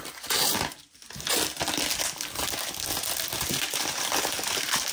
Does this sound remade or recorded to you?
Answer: recorded